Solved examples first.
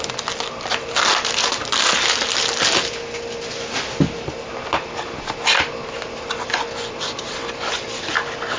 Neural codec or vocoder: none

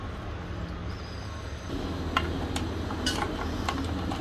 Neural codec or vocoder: none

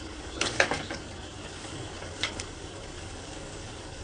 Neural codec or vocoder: codec, DAC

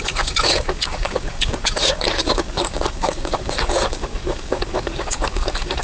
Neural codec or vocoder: codec, DAC